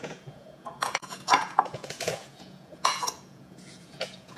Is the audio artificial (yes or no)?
yes